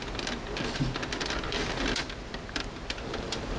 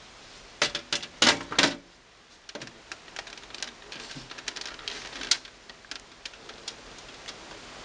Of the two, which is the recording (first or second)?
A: second